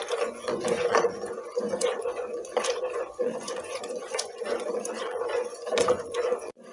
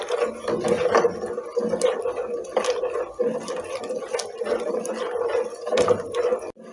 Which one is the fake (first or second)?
first